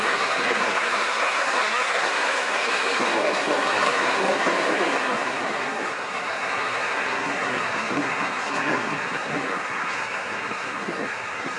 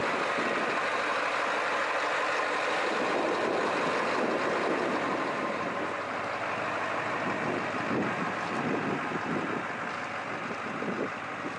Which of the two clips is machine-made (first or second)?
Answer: first